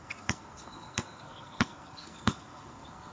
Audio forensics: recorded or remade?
remade